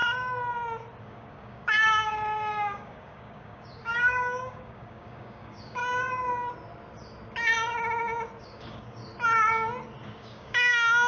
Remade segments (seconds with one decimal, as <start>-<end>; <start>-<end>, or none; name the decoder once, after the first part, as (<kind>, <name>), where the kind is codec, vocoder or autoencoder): 1.0-5.8 (codec, DAC); 8.4-9.0; 10.2-11.1